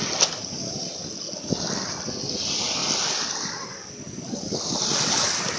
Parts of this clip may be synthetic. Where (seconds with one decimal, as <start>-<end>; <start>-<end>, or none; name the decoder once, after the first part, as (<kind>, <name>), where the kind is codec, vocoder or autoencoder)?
none